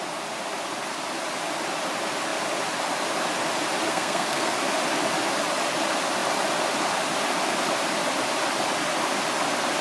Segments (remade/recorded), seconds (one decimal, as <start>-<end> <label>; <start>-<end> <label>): 0.0-3.9 recorded; 3.9-4.5 remade; 4.5-9.8 recorded